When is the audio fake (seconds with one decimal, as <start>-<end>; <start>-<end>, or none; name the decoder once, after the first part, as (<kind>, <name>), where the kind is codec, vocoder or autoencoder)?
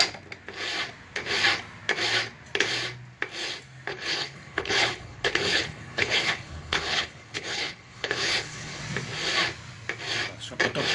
3.9-8.8 (codec, HILCodec)